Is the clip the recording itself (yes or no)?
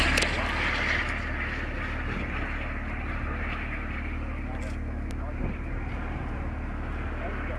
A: yes